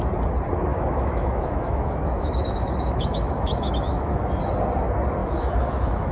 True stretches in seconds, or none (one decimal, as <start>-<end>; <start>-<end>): 0.0-0.7; 4.4-5.2